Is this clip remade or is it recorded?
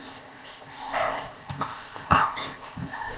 remade